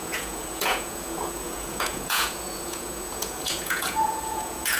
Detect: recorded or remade remade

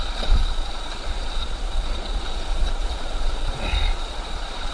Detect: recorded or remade remade